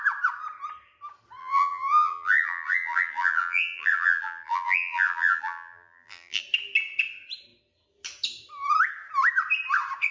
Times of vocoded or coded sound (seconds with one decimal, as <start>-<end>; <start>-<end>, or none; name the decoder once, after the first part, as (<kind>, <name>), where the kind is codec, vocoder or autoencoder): 1.4-6.4 (vocoder, BigVGAN v2)